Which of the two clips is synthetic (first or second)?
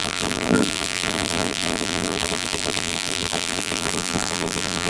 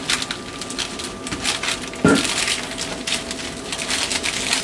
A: first